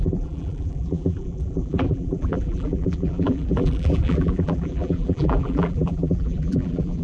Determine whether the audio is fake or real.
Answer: fake